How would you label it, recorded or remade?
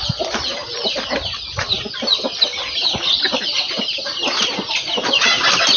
recorded